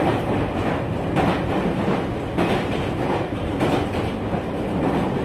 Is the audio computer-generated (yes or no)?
yes